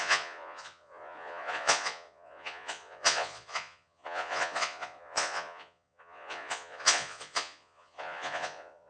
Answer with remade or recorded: remade